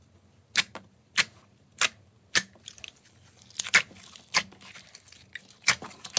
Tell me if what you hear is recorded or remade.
recorded